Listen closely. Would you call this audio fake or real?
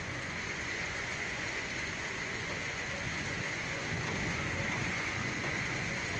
fake